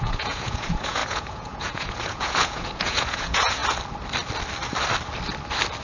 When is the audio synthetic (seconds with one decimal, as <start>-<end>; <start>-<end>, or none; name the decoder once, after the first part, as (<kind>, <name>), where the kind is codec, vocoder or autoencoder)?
0.0-3.6 (vocoder, Vocos)